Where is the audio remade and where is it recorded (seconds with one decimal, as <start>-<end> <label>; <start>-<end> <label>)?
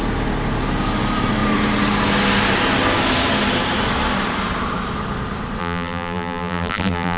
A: 0.0-5.6 recorded; 5.6-7.2 remade